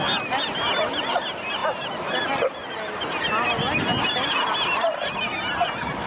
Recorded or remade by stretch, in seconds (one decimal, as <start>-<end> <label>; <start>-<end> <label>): 0.0-6.1 recorded